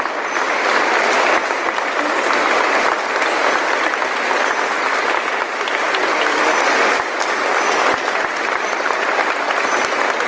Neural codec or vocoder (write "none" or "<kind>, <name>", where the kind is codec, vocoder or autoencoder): none